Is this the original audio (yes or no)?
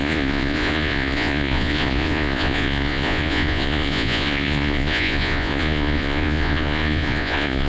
no